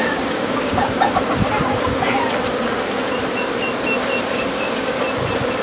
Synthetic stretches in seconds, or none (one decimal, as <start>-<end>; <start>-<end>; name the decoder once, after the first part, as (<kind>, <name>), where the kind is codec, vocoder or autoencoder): 0.0-0.8 (codec, DAC); 4.3-5.0